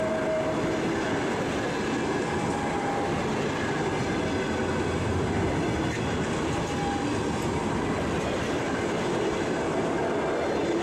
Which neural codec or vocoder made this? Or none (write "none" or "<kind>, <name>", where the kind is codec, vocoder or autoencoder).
none